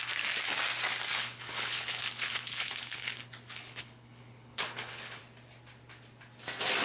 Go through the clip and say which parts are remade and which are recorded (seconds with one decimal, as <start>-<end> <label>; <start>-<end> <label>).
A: 0.0-1.1 recorded; 1.1-5.2 remade; 5.2-6.8 recorded